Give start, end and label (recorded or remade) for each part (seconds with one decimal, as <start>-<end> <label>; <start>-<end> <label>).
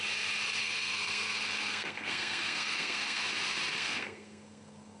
0.0-0.6 recorded; 0.6-3.2 remade; 3.2-3.7 recorded; 3.7-5.0 remade